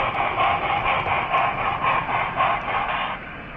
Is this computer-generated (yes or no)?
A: yes